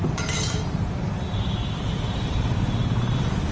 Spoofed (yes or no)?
yes